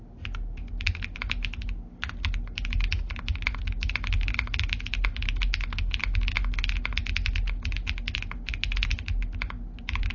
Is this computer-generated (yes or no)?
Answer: no